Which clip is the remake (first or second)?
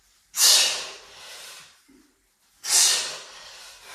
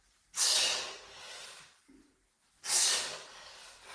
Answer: first